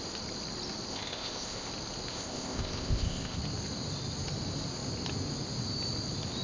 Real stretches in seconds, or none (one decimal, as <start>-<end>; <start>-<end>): 0.0-0.9; 1.7-2.1; 3.4-6.4